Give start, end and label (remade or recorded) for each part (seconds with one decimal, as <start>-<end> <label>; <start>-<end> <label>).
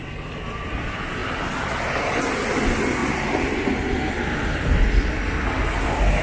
0.0-6.2 recorded